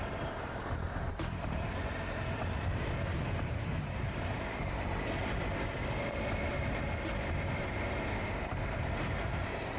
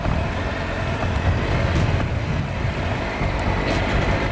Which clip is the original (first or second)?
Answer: second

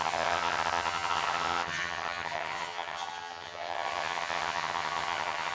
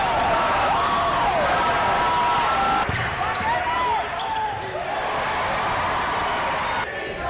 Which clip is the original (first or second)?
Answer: second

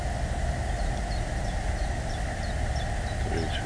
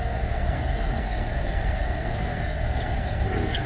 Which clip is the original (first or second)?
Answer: first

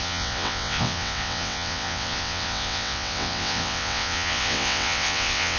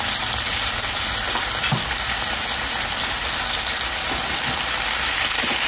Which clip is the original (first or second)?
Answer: second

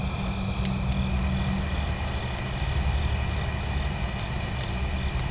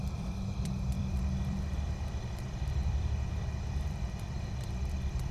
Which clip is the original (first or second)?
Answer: first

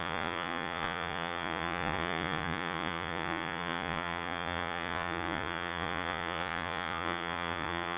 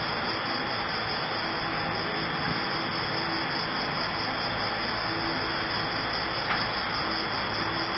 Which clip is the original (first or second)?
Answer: second